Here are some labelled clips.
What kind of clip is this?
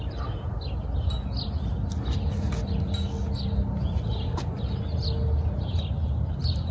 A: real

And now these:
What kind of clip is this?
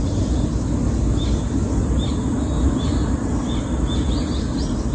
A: real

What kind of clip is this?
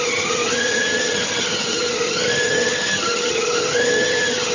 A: fake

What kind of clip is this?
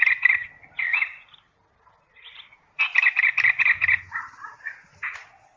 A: real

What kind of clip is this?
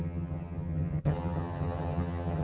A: fake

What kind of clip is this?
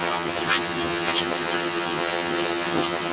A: fake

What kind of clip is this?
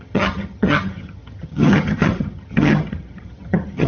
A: fake